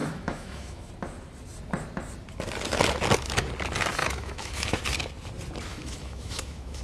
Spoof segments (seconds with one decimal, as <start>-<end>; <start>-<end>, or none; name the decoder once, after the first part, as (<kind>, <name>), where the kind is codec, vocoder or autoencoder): 0.0-0.9 (autoencoder, DAC-VAE); 4.0-4.8; 5.7-6.8